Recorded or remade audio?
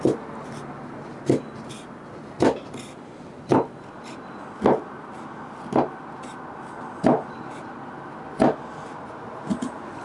recorded